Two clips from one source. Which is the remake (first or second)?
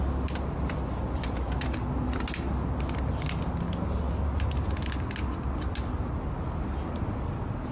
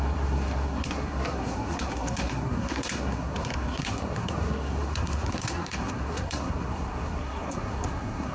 second